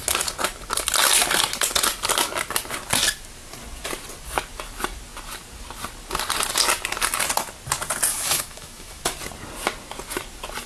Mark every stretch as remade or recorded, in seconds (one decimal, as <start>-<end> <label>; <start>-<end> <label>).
0.0-8.1 recorded; 8.1-9.0 remade; 9.0-10.7 recorded